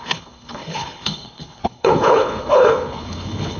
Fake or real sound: fake